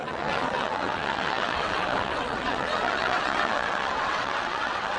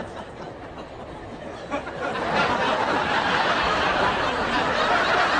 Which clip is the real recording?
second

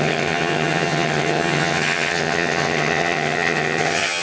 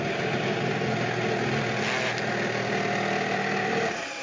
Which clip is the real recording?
second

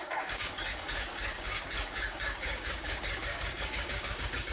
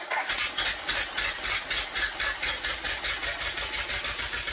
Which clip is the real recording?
second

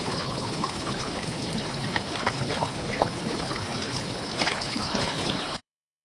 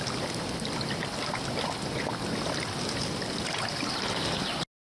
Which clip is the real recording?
second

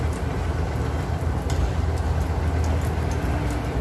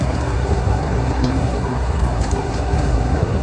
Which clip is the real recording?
first